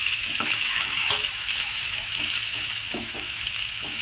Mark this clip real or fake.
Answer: fake